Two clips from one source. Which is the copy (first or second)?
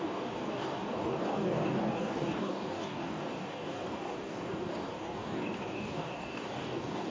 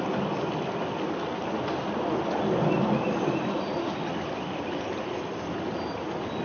first